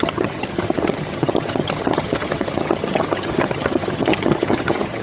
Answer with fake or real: fake